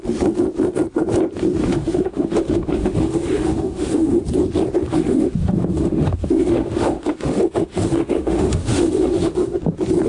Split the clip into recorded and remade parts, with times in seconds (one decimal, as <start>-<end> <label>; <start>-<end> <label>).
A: 0.0-1.6 recorded; 1.6-4.2 remade; 4.2-4.9 recorded; 4.9-9.6 remade; 9.6-10.1 recorded

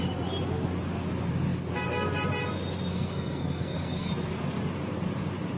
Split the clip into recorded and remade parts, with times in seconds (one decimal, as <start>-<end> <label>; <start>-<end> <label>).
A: 0.0-2.9 recorded; 2.9-4.1 remade; 4.1-5.6 recorded

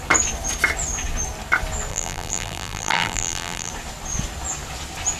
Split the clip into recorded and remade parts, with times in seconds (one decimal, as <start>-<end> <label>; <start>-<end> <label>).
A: 0.0-1.9 recorded; 1.9-3.7 remade; 3.7-5.2 recorded